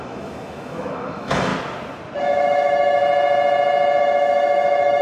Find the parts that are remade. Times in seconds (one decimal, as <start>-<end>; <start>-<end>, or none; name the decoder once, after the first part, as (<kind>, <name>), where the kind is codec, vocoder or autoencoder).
0.0-1.5 (autoencoder, DAC-VAE); 2.2-3.0; 4.0-5.0